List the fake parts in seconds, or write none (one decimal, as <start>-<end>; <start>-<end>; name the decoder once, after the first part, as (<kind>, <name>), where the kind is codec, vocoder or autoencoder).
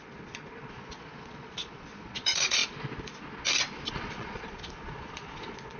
0.0-2.6 (vocoder, Vocos); 3.9-5.8